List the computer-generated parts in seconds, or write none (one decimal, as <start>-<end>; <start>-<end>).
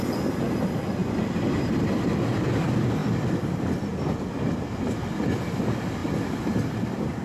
1.0-1.7; 3.0-5.6; 6.0-7.2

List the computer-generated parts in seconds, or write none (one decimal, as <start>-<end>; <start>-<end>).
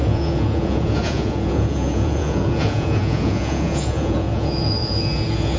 0.0-5.6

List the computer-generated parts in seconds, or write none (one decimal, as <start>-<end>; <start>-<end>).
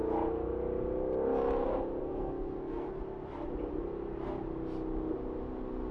2.0-3.0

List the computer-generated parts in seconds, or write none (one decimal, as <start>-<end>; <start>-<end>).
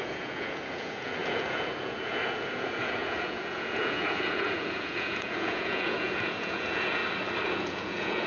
0.0-7.0; 7.5-8.3